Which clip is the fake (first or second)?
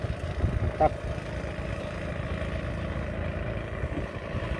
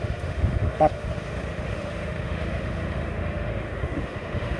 second